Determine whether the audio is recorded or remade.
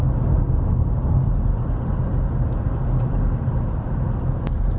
recorded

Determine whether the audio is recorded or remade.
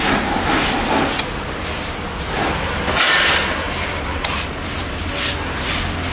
recorded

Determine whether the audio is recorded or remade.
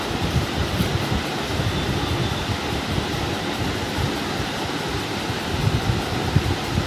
remade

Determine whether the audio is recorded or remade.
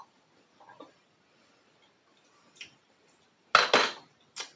recorded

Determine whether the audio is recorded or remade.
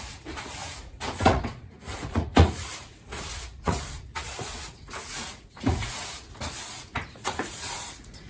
remade